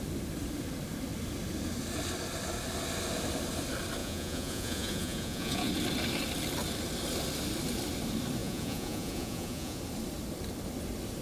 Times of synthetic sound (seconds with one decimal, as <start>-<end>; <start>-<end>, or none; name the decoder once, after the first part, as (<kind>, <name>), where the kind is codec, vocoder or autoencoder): 4.0-5.7 (vocoder, Vocos); 8.4-9.8